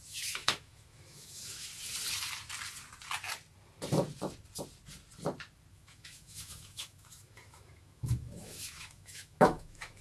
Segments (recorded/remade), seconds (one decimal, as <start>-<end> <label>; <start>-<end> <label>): 0.0-1.7 remade; 1.7-5.7 recorded; 5.7-10.0 remade